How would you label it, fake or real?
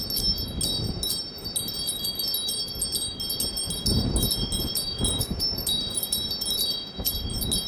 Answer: real